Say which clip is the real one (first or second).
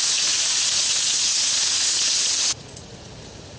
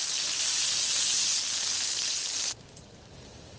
second